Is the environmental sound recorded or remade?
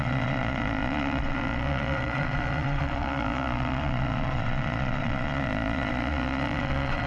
remade